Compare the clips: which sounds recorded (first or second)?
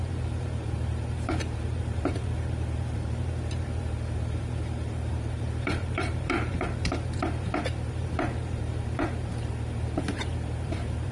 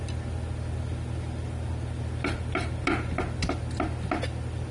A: second